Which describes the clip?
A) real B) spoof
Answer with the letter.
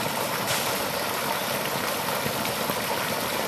B